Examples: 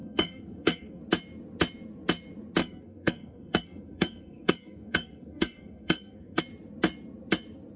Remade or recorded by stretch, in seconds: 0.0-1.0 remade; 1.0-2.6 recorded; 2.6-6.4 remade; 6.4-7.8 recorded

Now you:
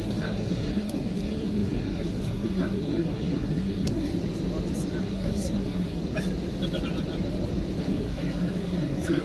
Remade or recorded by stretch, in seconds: 0.0-4.1 remade; 4.1-5.0 recorded; 5.0-6.0 remade; 6.0-7.8 recorded; 7.8-9.2 remade

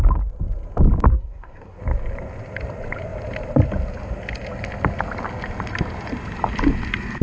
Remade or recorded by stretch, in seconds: 0.0-1.1 recorded; 1.1-1.8 remade; 1.8-7.2 recorded

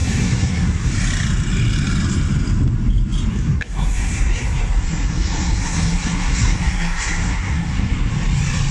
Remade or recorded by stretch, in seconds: 0.0-0.9 remade; 0.9-3.3 recorded; 3.3-8.1 remade; 8.1-8.7 recorded

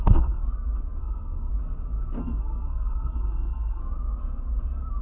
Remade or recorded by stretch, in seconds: 0.0-0.4 remade; 0.4-1.0 recorded; 1.0-1.5 remade; 1.5-2.2 recorded; 2.2-3.8 remade; 3.8-5.0 recorded

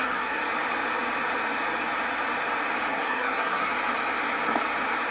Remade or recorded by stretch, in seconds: 0.0-0.4 remade; 0.4-2.9 recorded; 2.9-3.7 remade; 3.7-5.1 recorded